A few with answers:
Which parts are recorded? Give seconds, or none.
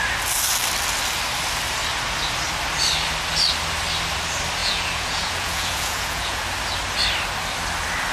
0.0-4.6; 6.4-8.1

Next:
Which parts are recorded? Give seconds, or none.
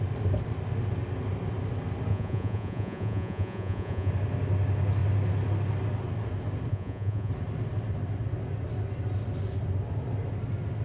0.0-2.1; 4.1-6.7; 7.3-10.8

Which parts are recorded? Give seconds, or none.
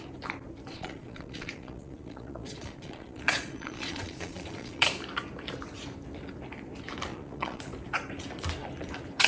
0.0-0.7; 4.9-7.1; 7.6-9.3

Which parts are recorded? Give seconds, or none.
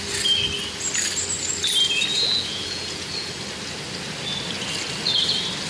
0.0-2.1; 3.3-5.7